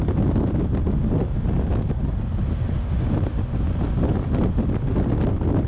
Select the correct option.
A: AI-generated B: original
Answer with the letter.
B